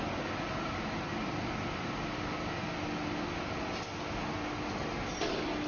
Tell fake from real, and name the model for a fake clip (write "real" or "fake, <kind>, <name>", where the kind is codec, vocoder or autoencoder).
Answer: real